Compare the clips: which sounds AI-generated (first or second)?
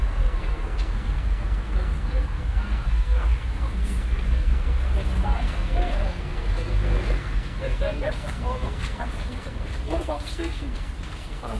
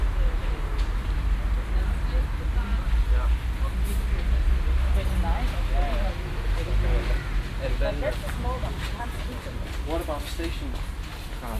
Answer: first